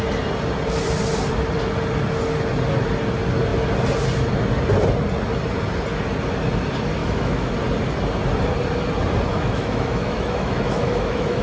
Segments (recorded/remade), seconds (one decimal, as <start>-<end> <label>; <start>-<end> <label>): 0.0-7.0 recorded; 7.0-7.5 remade; 7.5-9.3 recorded; 9.3-11.4 remade